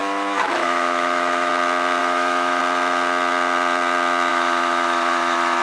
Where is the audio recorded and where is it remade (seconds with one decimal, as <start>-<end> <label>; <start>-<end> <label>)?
0.0-1.5 remade; 1.5-2.0 recorded; 2.0-2.6 remade; 2.6-4.3 recorded; 4.3-5.6 remade